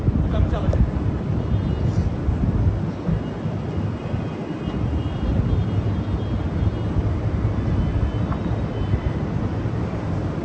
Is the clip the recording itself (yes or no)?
yes